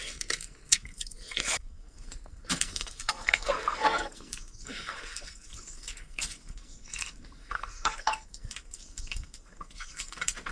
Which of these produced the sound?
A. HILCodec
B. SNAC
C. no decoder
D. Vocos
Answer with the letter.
B